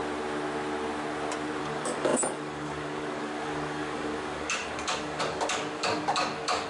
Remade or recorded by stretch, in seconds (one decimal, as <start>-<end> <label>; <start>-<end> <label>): 0.0-1.6 recorded; 1.6-6.7 remade